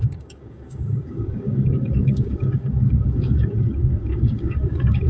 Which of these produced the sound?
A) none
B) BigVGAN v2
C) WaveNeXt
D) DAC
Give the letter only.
D